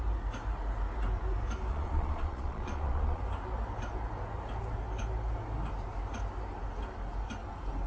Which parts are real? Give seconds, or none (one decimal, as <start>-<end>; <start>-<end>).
0.0-1.7; 3.2-7.9